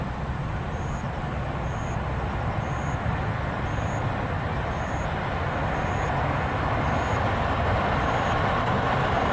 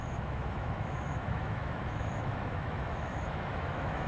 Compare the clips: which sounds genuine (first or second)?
first